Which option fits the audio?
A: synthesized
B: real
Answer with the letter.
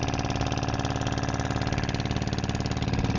B